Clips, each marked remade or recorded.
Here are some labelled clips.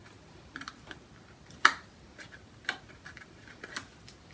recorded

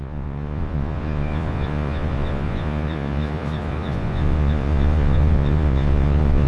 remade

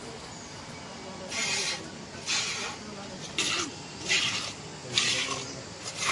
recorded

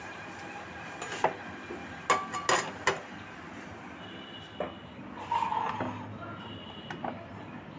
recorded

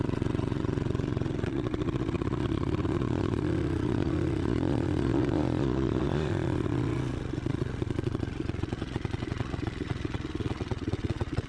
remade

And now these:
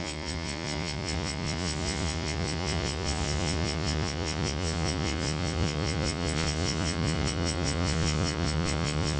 remade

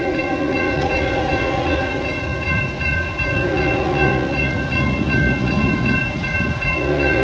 remade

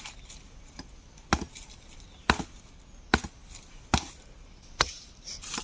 recorded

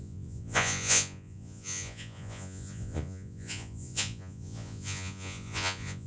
remade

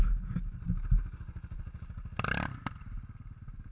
recorded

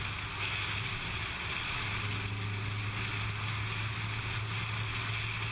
recorded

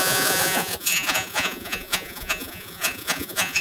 remade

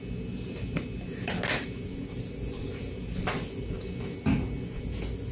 recorded